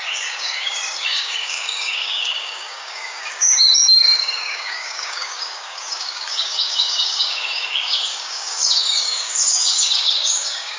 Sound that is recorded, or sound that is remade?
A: remade